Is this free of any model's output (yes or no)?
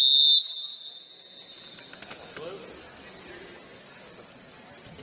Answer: yes